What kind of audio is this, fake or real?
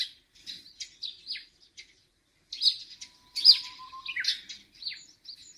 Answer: real